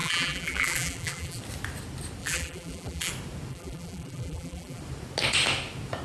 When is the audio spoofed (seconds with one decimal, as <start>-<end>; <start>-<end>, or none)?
0.0-1.4; 2.2-3.1; 3.5-4.8